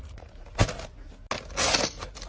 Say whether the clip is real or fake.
real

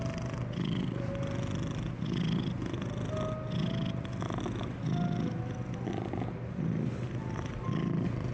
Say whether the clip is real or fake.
real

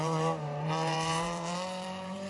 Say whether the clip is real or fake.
fake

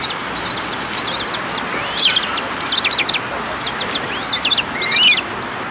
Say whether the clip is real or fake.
real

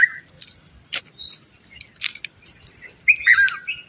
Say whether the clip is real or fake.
real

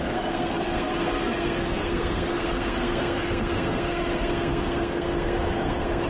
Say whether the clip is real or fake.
fake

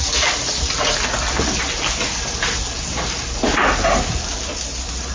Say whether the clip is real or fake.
real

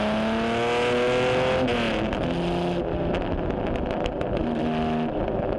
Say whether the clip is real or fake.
real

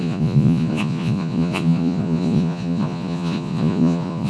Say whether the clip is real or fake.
fake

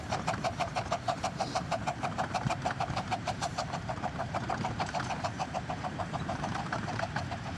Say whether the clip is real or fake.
fake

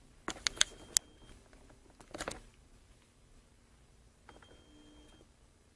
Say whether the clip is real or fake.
real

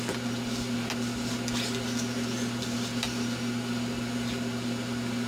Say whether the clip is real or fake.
real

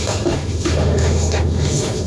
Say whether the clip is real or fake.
fake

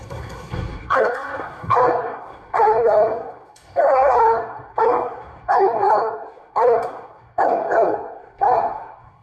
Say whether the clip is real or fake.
fake